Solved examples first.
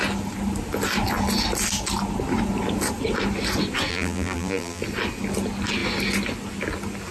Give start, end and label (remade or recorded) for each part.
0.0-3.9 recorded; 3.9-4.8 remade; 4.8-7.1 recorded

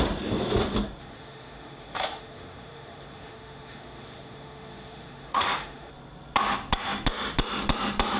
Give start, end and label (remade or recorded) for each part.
0.0-1.0 recorded; 1.0-5.9 remade; 5.9-8.2 recorded

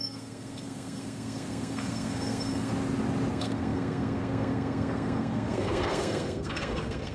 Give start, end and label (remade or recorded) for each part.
0.0-2.7 remade; 2.7-3.3 recorded; 3.3-7.1 remade

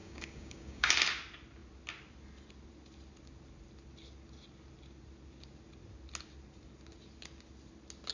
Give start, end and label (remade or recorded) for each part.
0.0-0.9 remade; 0.9-8.1 recorded

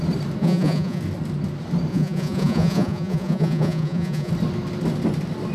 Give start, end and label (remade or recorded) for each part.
0.0-0.4 recorded; 0.4-1.0 remade; 1.0-1.9 recorded; 1.9-4.3 remade; 4.3-5.5 recorded

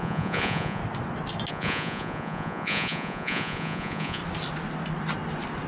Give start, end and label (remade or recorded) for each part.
0.0-0.8 remade; 0.8-1.5 recorded; 1.5-4.2 remade; 4.2-5.7 recorded